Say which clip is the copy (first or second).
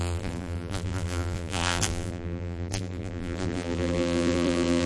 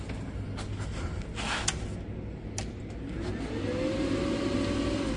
first